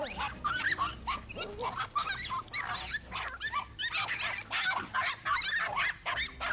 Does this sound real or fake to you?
real